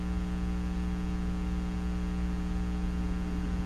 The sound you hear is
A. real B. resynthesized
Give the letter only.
A